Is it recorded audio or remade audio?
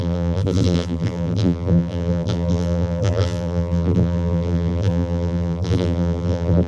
remade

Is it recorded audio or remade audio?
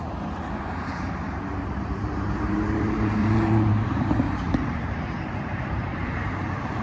remade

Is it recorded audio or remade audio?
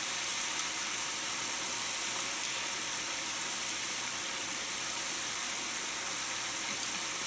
remade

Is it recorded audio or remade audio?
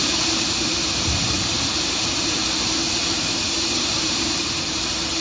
remade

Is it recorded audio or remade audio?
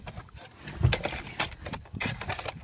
remade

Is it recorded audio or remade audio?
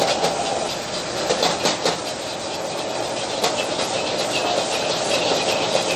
recorded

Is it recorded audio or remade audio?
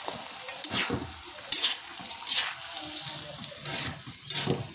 recorded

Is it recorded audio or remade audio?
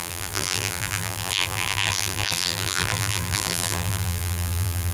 remade